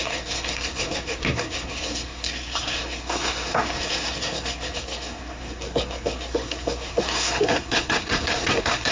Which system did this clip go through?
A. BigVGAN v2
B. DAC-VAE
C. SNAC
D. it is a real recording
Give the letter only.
C